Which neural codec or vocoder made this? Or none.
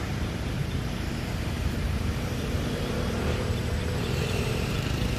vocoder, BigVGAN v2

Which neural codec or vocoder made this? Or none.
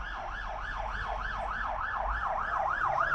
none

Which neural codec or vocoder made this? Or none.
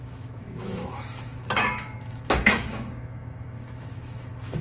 autoencoder, DAC-VAE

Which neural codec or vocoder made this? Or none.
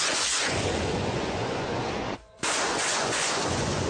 vocoder, Vocos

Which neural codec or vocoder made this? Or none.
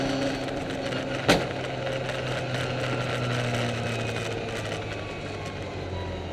none